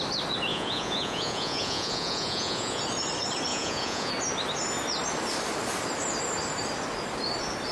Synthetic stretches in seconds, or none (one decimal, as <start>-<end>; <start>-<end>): 0.5-2.8; 3.5-4.1